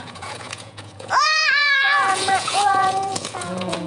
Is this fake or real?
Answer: fake